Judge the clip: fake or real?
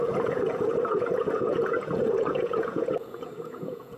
fake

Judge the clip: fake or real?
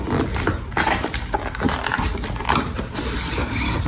fake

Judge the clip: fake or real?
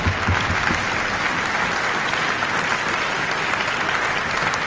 real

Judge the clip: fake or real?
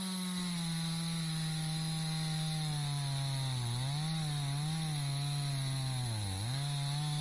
real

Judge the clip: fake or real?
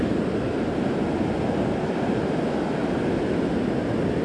real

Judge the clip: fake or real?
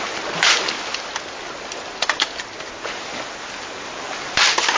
real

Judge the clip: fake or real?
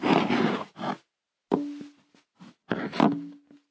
real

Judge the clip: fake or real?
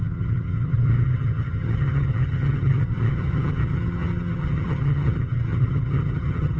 fake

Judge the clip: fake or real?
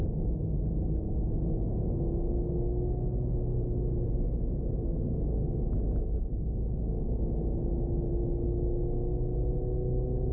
real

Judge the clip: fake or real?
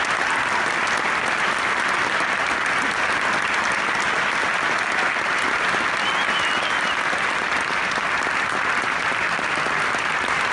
real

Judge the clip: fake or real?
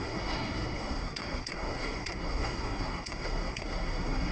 fake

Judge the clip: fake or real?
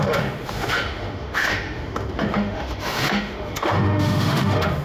fake